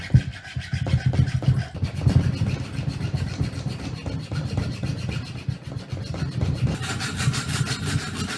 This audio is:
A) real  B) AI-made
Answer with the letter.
A